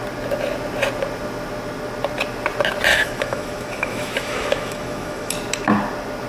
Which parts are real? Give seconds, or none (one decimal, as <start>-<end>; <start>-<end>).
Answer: 0.0-2.9; 5.3-6.3